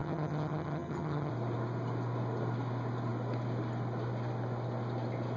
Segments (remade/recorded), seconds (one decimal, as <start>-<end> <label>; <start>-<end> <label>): 0.0-1.3 remade; 1.3-5.4 recorded